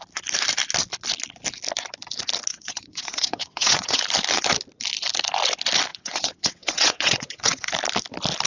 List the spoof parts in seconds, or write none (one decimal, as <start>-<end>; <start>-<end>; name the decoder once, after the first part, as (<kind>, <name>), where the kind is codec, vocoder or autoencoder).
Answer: 2.5-4.0 (vocoder, WaveNeXt); 5.9-7.7